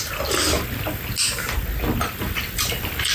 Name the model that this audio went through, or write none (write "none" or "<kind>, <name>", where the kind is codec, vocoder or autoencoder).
none